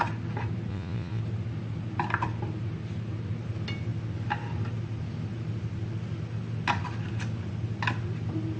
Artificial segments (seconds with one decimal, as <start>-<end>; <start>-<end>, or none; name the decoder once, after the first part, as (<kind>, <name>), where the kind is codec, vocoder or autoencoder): 0.7-1.2 (vocoder, Vocos)